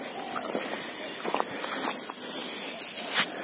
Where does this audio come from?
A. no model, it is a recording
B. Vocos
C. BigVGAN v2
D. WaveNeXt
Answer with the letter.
A